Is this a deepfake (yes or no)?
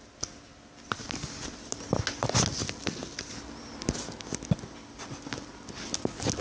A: no